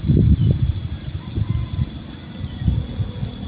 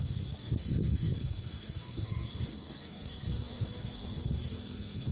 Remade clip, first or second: second